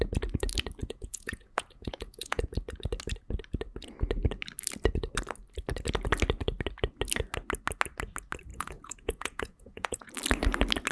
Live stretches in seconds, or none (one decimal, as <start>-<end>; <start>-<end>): 0.0-0.8; 2.4-8.5; 10.1-10.9